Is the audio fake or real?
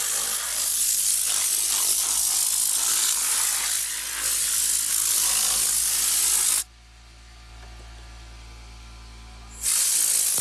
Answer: real